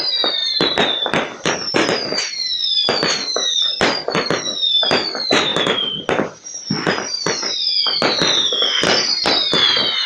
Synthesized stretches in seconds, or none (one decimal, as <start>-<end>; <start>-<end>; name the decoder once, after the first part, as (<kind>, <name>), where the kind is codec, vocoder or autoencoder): none